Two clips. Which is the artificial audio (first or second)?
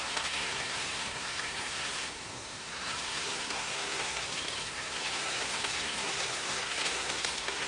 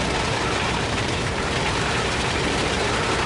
first